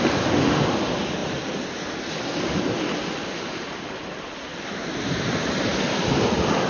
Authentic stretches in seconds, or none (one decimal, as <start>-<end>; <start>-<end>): 0.0-1.2; 2.2-6.7